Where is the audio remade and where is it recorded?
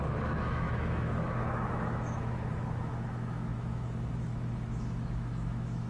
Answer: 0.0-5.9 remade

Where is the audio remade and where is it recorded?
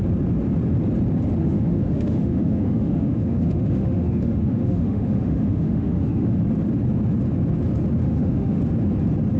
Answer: 0.0-1.4 recorded; 1.4-6.4 remade; 6.4-8.0 recorded; 8.0-8.6 remade; 8.6-9.4 recorded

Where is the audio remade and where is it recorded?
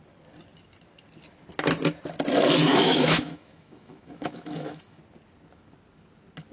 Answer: 0.0-2.7 recorded; 2.7-5.0 remade; 5.0-6.5 recorded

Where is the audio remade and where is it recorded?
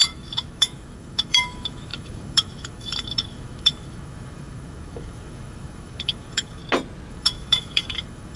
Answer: 0.0-6.6 remade; 6.6-7.1 recorded; 7.1-8.4 remade